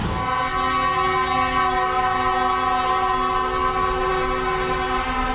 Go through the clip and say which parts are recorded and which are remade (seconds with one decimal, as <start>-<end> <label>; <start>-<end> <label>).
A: 0.0-5.3 recorded